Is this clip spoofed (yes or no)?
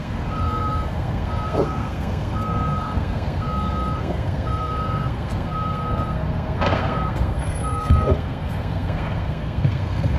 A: yes